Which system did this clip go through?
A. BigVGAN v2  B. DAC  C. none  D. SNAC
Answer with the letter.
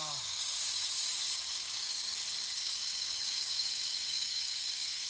B